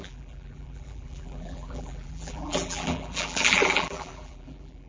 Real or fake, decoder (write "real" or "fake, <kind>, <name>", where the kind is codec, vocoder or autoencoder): fake, vocoder, BigVGAN v2